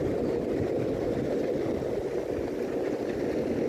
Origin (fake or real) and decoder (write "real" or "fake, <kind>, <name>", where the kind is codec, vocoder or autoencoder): real